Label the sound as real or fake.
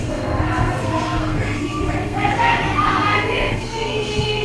fake